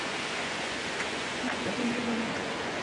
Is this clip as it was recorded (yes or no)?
no